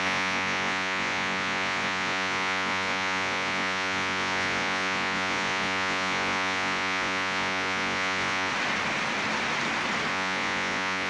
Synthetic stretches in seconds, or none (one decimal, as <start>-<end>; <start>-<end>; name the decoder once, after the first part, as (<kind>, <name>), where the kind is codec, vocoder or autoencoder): 0.0-8.5 (vocoder, Vocos); 10.1-11.1